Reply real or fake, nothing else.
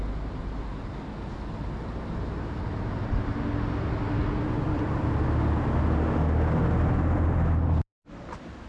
real